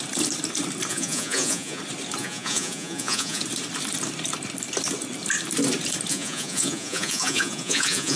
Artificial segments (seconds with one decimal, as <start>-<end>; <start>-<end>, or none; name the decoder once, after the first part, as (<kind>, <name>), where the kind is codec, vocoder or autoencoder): 0.9-1.8 (vocoder, Vocos); 2.2-3.4; 6.1-8.2